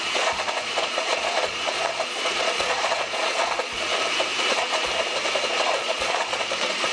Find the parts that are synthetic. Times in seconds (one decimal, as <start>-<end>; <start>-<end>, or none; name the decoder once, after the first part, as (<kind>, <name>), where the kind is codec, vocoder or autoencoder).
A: 0.0-3.9 (vocoder, Vocos); 4.5-4.9; 5.4-6.9